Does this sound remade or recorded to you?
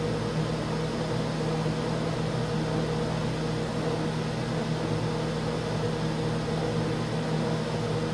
recorded